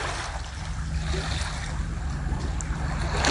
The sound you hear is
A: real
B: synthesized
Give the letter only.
A